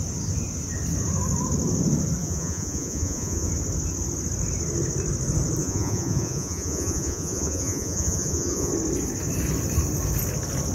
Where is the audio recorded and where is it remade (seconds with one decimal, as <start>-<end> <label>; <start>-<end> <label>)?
0.0-2.2 recorded; 2.2-3.5 remade; 3.5-5.6 recorded; 5.6-8.7 remade; 8.7-10.7 recorded